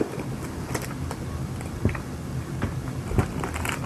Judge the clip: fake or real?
real